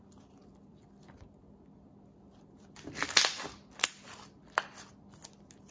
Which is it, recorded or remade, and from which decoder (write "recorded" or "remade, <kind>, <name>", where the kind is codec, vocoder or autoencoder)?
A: recorded